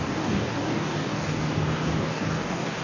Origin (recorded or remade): remade